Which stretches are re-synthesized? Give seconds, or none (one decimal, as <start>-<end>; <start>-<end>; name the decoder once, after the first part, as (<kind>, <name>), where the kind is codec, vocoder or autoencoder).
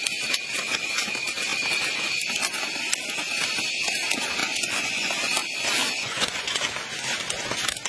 4.4-5.1 (vocoder, Vocos); 5.8-6.6